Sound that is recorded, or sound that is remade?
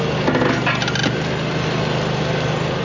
recorded